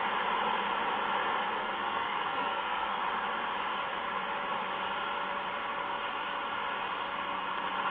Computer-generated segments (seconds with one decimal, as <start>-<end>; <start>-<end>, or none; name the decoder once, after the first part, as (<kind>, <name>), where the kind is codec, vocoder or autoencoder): 1.6-3.0 (codec, SNAC)

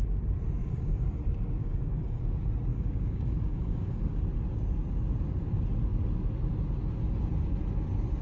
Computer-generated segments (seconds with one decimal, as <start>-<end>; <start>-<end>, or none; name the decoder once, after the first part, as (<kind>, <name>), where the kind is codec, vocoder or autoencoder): 0.6-1.2 (codec, DAC); 1.6-2.2; 2.7-4.2